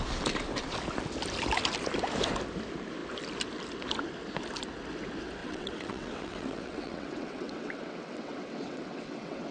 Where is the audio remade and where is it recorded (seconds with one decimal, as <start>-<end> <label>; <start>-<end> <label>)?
0.0-5.4 recorded; 5.4-9.5 remade